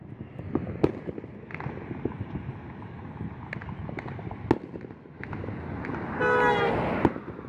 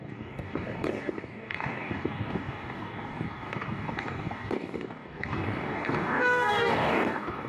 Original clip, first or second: first